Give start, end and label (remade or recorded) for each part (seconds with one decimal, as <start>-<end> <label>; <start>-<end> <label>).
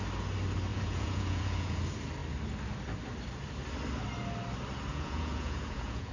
0.0-0.7 recorded; 0.7-1.8 remade; 1.8-4.9 recorded; 4.9-6.1 remade